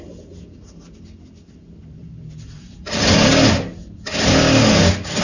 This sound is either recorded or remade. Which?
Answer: recorded